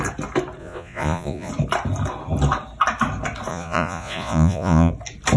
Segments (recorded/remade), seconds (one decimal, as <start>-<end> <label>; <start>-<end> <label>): 0.0-0.6 recorded; 0.6-1.5 remade; 1.5-3.5 recorded; 3.5-4.9 remade; 4.9-5.4 recorded